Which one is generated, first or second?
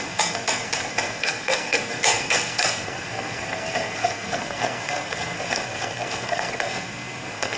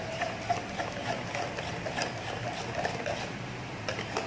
first